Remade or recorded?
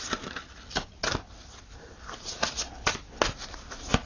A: recorded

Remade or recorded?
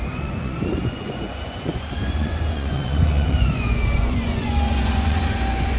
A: remade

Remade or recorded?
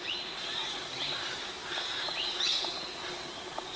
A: recorded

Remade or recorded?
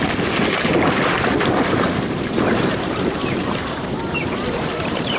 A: remade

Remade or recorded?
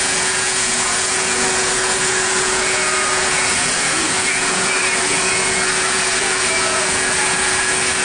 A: remade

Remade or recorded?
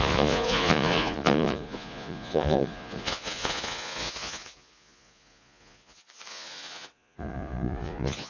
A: remade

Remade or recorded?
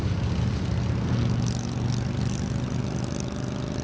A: recorded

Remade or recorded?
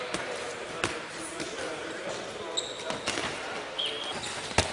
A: recorded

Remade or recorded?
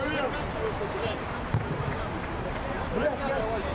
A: recorded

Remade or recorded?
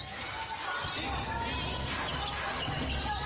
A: recorded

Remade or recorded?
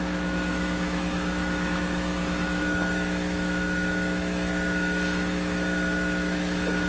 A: remade